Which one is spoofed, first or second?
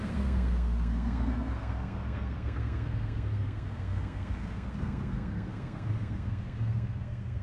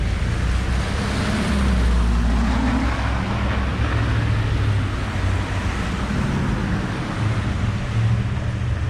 first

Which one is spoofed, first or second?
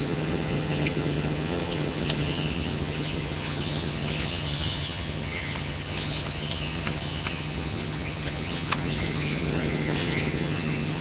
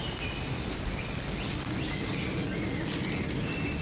first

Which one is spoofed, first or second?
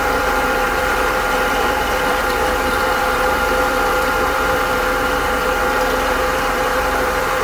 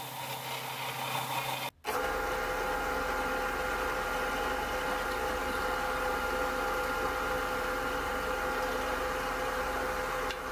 first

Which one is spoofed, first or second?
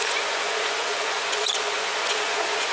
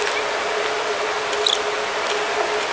first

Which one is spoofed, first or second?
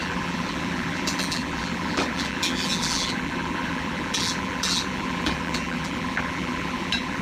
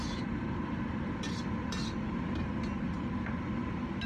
first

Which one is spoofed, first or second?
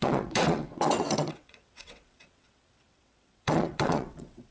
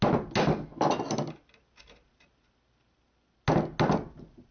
first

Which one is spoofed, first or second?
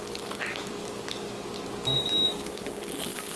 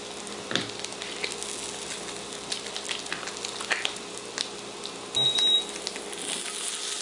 first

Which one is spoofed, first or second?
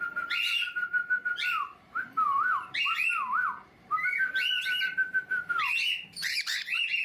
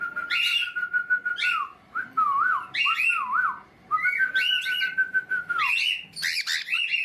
first